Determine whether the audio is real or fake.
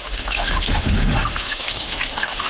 fake